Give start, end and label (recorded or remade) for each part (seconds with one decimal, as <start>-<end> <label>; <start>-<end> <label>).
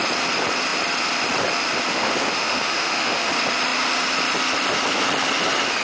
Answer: 0.0-1.9 recorded; 1.9-3.3 remade; 3.3-5.8 recorded